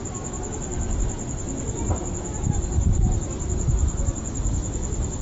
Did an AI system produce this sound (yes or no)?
no